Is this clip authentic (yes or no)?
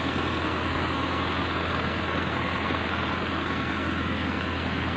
no